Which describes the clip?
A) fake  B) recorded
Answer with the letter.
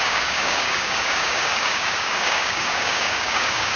A